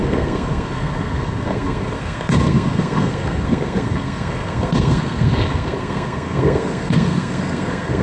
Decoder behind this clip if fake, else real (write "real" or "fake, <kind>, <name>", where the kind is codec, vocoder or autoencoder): fake, codec, SNAC